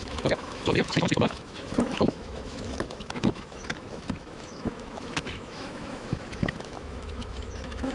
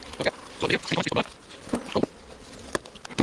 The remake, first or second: first